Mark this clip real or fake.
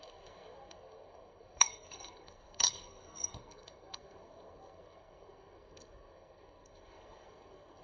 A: fake